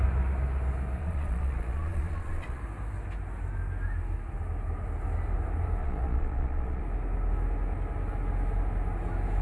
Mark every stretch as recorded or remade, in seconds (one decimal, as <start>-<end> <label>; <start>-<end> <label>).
0.0-1.0 recorded; 1.0-2.6 remade; 2.6-5.8 recorded; 5.8-6.8 remade; 6.8-9.4 recorded

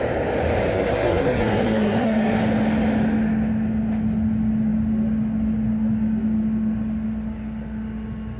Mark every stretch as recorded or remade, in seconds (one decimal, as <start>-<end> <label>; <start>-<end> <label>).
0.0-0.7 recorded; 0.7-2.4 remade; 2.4-8.4 recorded

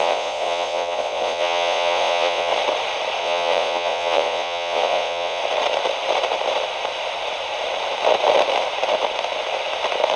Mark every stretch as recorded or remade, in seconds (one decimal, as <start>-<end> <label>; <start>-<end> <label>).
0.0-2.5 remade; 2.5-3.2 recorded; 3.2-5.4 remade; 5.4-10.2 recorded

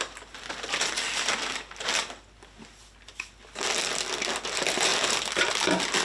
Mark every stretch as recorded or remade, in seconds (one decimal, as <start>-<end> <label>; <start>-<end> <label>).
0.0-6.0 recorded

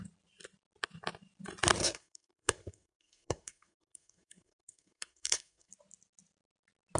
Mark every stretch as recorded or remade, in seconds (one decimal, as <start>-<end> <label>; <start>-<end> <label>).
0.0-1.8 recorded; 1.8-5.7 remade; 5.7-7.0 recorded